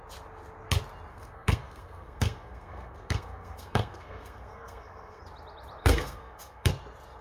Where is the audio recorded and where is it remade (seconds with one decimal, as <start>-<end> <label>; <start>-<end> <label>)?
0.0-1.1 recorded; 1.1-5.2 remade; 5.2-5.8 recorded; 5.8-6.7 remade; 6.7-7.2 recorded